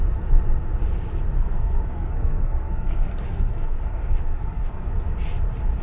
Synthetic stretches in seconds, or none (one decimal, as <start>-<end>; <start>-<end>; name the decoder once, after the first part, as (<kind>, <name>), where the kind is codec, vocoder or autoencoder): 1.4-4.9 (codec, SNAC)

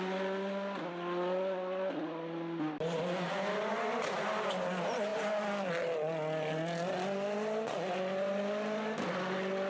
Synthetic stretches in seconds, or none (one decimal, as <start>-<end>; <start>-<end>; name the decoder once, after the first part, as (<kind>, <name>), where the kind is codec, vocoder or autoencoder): none

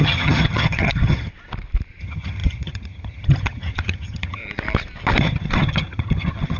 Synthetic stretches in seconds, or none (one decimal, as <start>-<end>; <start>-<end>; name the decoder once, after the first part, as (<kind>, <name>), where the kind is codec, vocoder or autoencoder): 0.0-1.3 (vocoder, HiFi-GAN); 2.0-4.4; 5.2-6.6

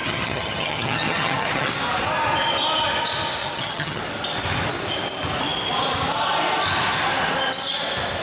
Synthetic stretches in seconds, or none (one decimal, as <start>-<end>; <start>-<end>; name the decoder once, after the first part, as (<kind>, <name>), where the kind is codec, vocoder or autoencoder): 0.0-1.7 (vocoder, HiFi-GAN); 3.4-4.0